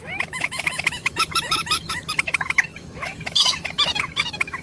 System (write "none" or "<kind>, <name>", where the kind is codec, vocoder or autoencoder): autoencoder, DAC-VAE